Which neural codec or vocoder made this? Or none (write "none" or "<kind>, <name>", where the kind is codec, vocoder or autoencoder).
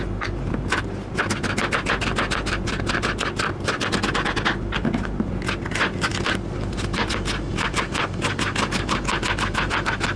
none